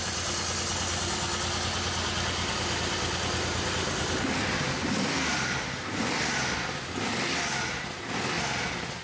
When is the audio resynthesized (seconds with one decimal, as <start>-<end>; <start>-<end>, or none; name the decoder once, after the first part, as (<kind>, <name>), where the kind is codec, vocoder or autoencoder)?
none